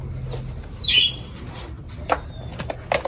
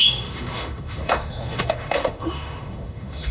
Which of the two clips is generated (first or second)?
second